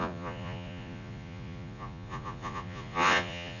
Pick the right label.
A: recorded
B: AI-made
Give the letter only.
B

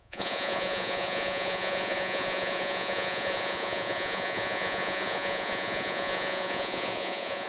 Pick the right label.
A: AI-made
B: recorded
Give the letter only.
A